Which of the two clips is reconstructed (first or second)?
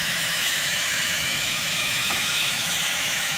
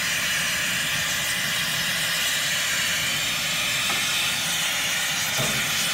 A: first